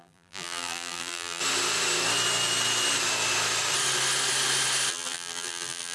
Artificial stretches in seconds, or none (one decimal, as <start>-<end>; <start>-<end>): 0.0-1.4; 4.9-5.9